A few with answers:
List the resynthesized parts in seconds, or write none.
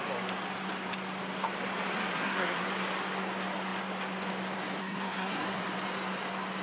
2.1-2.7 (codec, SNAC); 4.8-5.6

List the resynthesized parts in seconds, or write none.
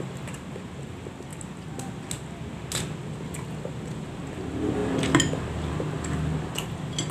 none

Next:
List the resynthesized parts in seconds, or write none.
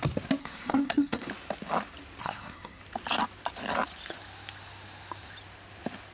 0.4-1.3 (codec, SNAC); 2.2-2.8